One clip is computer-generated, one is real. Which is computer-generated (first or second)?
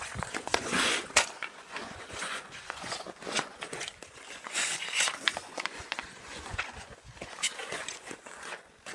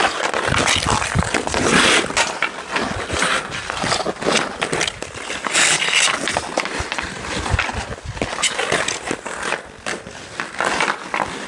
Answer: first